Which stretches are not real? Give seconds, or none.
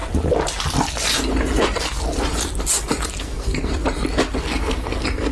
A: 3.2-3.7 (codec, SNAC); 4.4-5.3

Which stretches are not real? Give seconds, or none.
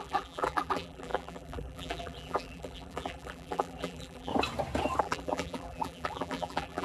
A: 0.0-4.3 (vocoder, BigVGAN v2); 5.0-6.8